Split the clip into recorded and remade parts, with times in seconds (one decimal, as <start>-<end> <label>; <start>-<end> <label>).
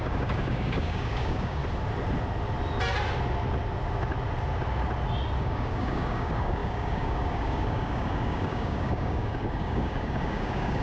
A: 0.0-1.6 remade; 1.6-5.4 recorded; 5.4-10.8 remade